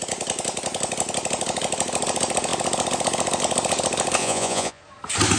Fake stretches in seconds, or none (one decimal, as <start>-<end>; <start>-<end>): 4.2-4.8